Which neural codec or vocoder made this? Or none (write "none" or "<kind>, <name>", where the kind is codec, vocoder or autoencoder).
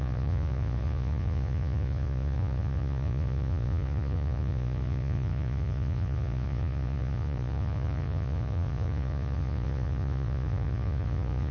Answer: vocoder, Vocos